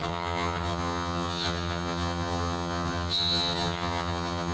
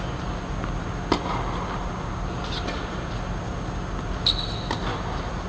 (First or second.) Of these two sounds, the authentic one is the second